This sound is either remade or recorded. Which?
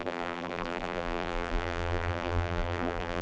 remade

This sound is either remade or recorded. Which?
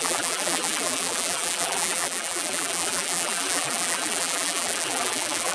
remade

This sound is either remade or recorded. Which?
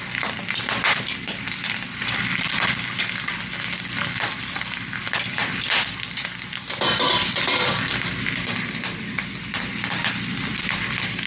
remade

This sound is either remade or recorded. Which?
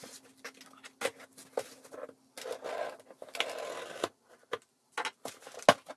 recorded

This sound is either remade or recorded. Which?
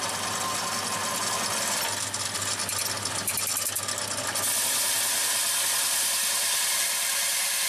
recorded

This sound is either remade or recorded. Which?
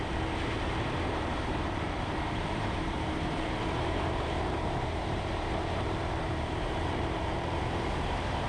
remade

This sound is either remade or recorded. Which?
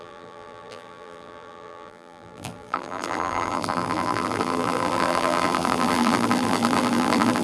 remade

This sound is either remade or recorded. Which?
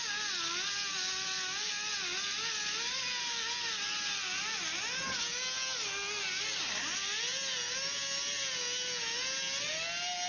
recorded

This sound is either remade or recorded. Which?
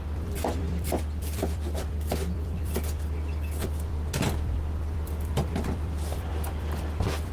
remade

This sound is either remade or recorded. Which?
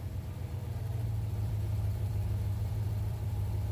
remade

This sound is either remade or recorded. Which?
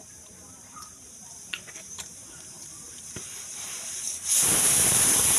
remade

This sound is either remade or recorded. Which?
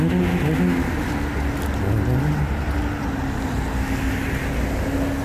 recorded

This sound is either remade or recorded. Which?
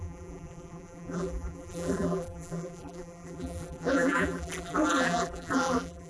remade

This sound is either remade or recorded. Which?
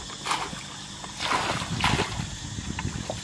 recorded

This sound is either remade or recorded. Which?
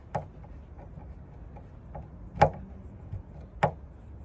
recorded